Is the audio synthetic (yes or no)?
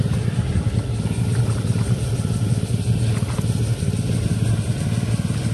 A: no